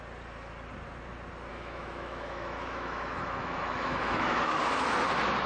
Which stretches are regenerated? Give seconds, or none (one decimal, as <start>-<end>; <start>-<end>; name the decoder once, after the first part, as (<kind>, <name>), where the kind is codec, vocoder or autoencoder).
1.5-4.6 (autoencoder, DAC-VAE)